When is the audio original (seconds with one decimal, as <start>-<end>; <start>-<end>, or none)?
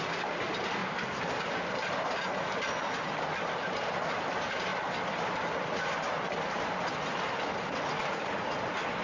0.0-9.0